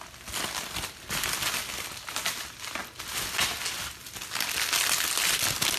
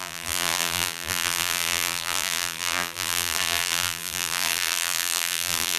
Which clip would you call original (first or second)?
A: first